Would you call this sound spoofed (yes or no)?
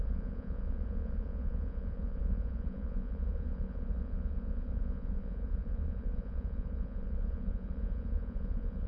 yes